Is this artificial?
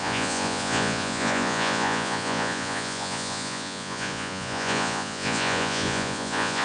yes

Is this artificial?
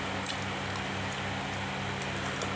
no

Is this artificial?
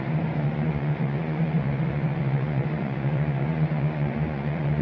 yes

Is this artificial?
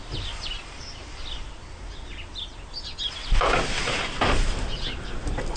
no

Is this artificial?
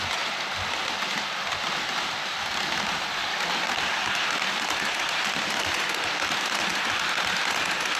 no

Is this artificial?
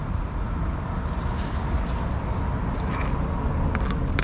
no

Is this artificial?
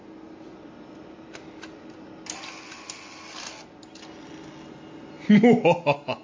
no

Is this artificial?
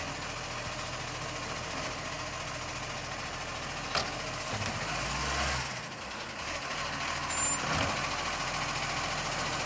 no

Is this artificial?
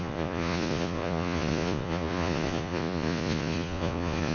yes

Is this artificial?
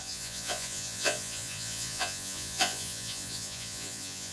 yes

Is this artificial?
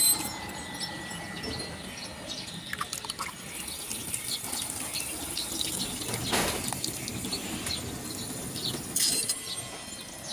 no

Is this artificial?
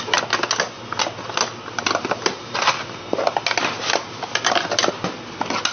no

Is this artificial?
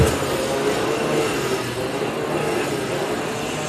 no